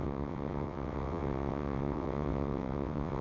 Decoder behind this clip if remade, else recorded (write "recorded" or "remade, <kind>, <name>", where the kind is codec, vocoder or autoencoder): remade, vocoder, WaveNeXt